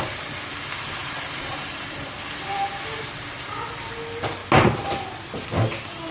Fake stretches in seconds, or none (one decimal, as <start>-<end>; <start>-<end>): 1.0-2.1